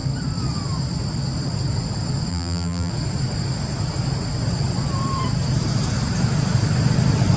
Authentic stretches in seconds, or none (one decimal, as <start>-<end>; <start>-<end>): 0.0-2.3; 2.9-7.4